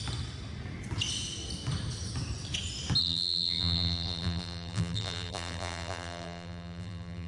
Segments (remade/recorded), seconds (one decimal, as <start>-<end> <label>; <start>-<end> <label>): 0.0-3.0 recorded; 3.0-7.3 remade